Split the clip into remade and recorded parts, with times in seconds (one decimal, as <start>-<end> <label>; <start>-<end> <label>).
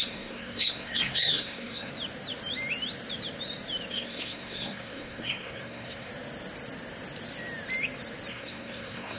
0.0-1.9 remade; 1.9-3.9 recorded; 3.9-6.1 remade; 6.1-8.3 recorded; 8.3-9.2 remade